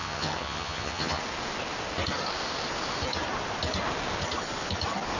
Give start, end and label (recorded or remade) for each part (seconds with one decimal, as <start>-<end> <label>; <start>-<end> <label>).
0.0-1.2 remade; 1.2-5.2 recorded